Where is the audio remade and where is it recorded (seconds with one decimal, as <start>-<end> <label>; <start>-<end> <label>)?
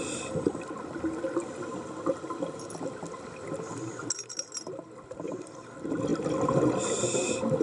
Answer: 0.0-7.6 recorded